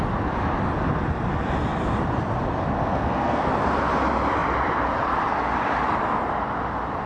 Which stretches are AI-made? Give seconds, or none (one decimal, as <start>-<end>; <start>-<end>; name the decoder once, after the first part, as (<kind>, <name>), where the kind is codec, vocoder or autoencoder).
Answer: 2.8-3.5 (codec, SNAC)